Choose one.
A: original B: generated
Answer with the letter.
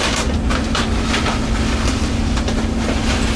A